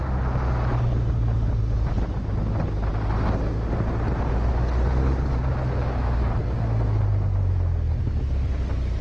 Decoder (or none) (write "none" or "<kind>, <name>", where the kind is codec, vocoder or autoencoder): none